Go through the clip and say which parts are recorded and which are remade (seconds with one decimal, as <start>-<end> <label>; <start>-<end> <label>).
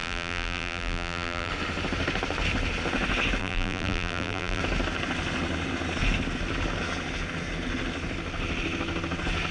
0.0-1.5 remade; 1.5-3.4 recorded; 3.4-4.6 remade; 4.6-9.5 recorded